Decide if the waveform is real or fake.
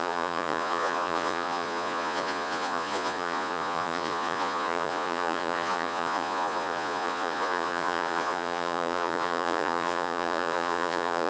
fake